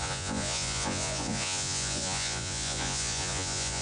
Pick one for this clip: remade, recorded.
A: remade